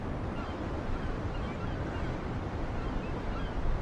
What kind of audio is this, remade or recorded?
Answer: recorded